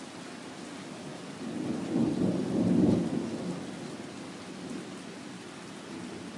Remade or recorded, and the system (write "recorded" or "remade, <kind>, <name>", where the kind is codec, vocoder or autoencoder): recorded